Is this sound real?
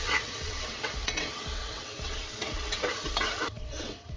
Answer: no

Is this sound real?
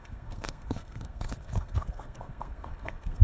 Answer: no